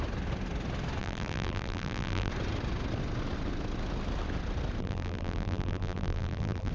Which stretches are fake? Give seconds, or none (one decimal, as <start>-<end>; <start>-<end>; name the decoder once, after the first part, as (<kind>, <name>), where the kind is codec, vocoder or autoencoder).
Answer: 1.0-2.3 (vocoder, BigVGAN v2); 4.8-6.7